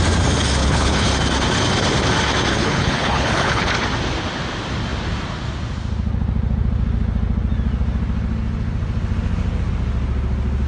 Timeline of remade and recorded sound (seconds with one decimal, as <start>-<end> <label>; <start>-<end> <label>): 0.0-0.6 recorded; 0.6-1.1 remade; 1.1-2.5 recorded; 2.5-3.7 remade; 3.7-10.7 recorded